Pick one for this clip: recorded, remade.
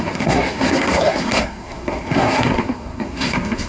remade